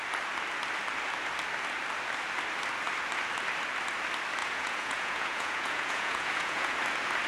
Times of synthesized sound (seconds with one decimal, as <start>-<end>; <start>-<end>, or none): 4.4-6.8